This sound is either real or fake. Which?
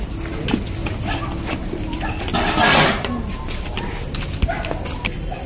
real